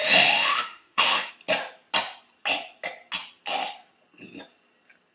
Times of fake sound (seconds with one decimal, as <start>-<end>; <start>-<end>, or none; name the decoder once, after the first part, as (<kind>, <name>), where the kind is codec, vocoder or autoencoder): 0.0-1.3 (autoencoder, DAC-VAE)